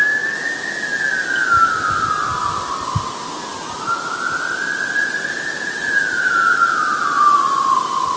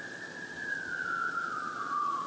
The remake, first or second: second